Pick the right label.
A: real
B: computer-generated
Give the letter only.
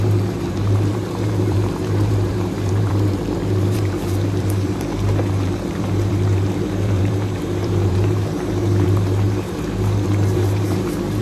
B